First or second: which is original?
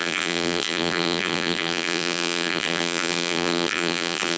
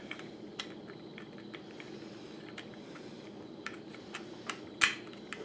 second